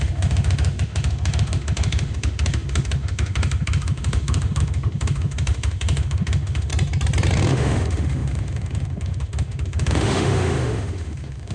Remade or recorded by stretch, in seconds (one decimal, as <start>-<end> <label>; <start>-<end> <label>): 0.0-6.7 remade; 6.7-7.5 recorded; 7.5-11.5 remade